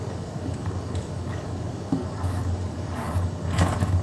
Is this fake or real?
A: fake